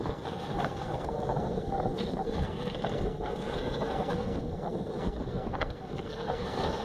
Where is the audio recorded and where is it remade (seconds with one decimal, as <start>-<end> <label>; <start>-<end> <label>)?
0.0-6.8 remade